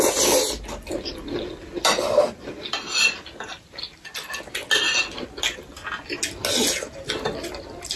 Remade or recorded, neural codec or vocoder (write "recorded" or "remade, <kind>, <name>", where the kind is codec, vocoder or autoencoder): recorded